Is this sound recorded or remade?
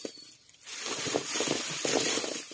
recorded